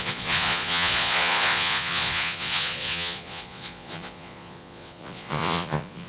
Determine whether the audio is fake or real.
fake